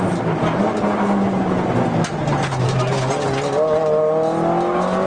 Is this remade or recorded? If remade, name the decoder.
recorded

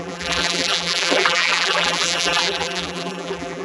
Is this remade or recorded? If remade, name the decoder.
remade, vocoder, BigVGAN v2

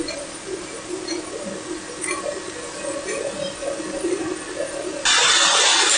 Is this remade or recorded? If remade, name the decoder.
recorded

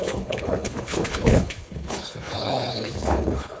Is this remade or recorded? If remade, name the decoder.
remade, codec, HILCodec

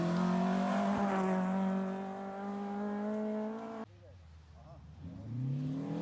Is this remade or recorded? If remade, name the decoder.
recorded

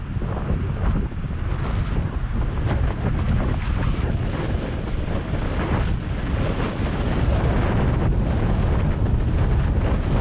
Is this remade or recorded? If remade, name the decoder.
recorded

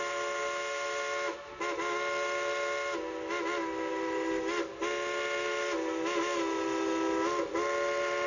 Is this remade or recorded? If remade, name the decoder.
recorded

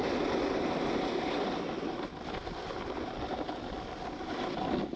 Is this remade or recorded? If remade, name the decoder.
recorded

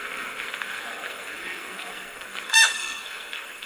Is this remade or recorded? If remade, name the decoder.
remade, codec, SNAC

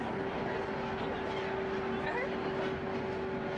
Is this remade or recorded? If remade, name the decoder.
recorded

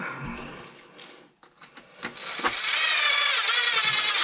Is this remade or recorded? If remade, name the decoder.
recorded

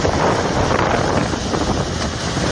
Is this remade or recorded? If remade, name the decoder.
recorded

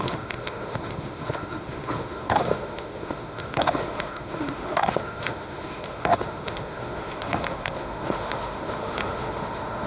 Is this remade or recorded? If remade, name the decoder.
remade, autoencoder, DAC-VAE